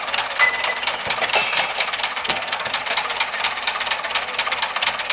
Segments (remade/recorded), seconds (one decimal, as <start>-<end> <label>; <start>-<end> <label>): 0.0-2.2 recorded; 2.2-2.7 remade; 2.7-5.1 recorded